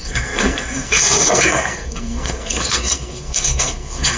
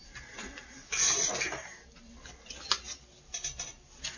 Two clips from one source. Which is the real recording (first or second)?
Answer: second